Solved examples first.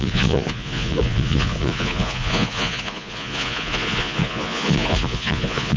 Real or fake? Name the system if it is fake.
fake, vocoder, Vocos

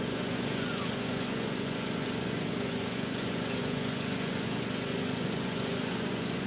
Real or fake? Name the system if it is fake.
fake, vocoder, Vocos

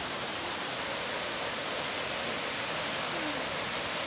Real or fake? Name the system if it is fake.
real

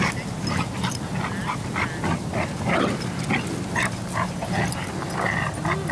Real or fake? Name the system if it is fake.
real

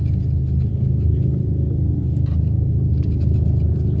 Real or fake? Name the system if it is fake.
real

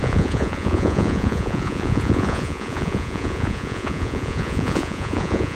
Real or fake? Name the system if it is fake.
fake, vocoder, Vocos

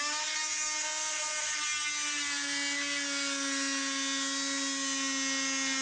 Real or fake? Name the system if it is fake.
real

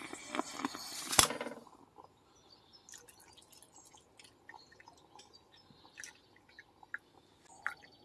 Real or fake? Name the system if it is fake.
real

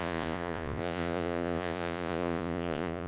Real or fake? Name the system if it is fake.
fake, vocoder, Vocos